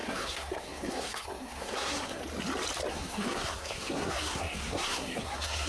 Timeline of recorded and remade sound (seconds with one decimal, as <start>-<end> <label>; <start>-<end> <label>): 0.0-2.2 remade; 2.2-2.9 recorded; 2.9-5.7 remade